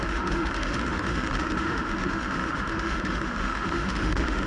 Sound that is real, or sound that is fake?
fake